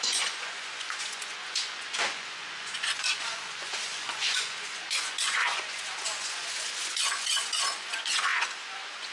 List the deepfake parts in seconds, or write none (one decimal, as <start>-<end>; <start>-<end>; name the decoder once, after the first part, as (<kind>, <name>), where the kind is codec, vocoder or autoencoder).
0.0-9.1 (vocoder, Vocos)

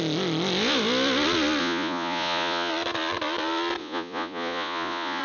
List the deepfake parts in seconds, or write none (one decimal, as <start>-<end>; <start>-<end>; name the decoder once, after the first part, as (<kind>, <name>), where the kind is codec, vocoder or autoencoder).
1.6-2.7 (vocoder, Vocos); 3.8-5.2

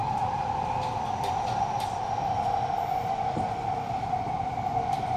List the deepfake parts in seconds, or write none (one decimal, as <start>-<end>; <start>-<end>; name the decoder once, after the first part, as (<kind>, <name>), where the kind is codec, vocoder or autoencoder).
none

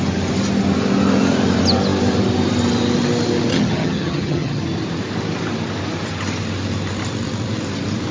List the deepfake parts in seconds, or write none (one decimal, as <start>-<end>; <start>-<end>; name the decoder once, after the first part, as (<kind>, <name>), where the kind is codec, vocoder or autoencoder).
3.5-4.6 (vocoder, HiFi-GAN)

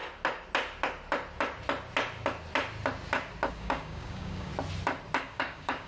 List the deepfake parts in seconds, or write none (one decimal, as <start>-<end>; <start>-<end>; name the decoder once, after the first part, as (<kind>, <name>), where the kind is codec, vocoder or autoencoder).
3.5-4.5 (codec, DAC); 5.2-5.9